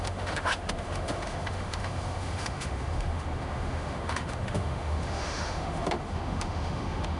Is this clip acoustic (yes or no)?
no